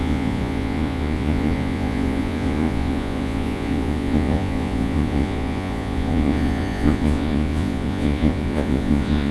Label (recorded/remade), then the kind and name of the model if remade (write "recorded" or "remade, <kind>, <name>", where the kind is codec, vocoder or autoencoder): remade, vocoder, Vocos